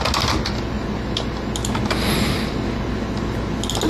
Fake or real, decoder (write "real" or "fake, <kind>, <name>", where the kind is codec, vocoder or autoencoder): real